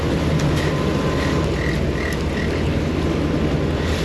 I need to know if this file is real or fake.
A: real